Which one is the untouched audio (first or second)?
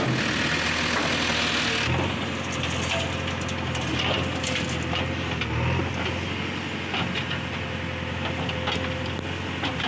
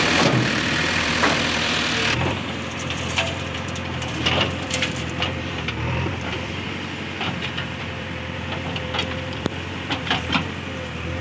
first